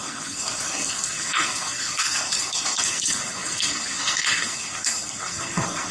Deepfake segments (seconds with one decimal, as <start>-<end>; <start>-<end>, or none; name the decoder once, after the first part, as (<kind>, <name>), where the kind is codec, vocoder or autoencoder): 0.0-5.9 (codec, SNAC)